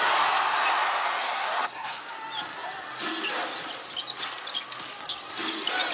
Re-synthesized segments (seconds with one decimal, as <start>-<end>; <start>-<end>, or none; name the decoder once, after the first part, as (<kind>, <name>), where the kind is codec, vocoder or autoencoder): 1.2-2.0 (codec, SNAC)

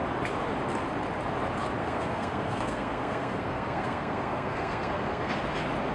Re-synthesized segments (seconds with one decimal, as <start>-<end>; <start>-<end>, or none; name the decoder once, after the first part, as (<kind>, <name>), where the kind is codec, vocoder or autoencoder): 1.8-5.3 (codec, SNAC)